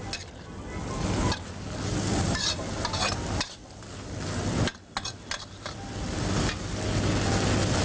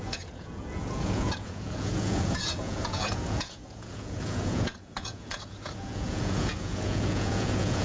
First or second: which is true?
first